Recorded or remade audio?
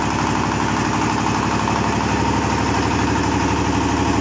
recorded